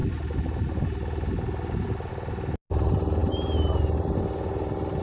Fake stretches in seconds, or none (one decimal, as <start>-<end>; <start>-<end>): none

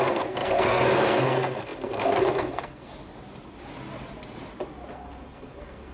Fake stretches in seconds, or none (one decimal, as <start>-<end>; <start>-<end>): 0.0-2.9; 4.9-5.9

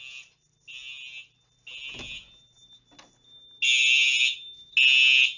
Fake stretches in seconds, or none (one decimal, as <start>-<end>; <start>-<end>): none

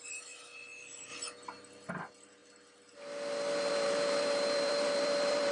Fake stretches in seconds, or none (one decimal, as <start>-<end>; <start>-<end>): 0.0-1.1; 1.9-2.4; 3.7-5.5

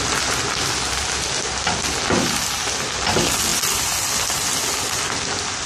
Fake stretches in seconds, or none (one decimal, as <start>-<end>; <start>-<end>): none